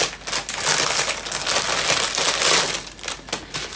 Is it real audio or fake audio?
real